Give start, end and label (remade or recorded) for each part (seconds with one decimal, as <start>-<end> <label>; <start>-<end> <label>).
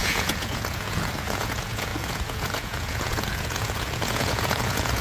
0.0-5.0 remade